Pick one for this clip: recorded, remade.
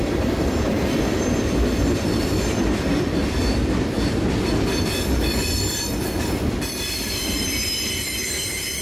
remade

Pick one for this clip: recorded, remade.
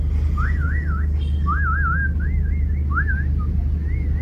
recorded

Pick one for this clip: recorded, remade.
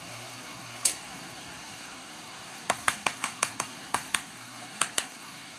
remade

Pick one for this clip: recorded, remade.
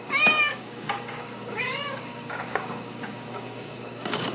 remade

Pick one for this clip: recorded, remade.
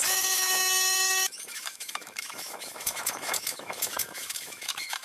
remade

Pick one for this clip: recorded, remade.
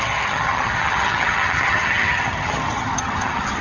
remade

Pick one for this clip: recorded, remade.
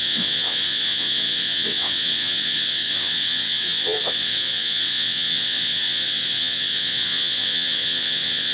remade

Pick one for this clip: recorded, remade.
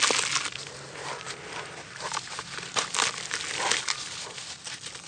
recorded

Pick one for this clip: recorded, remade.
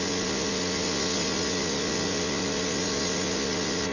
recorded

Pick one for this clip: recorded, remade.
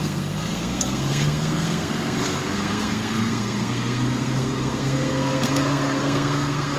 remade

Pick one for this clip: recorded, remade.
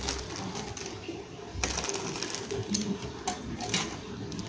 recorded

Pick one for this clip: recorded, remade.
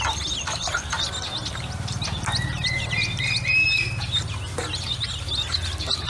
recorded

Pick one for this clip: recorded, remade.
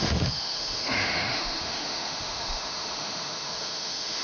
remade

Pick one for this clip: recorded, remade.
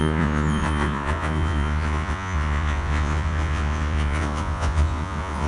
remade